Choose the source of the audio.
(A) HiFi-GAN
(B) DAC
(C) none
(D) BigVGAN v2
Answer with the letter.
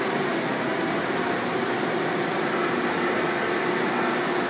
C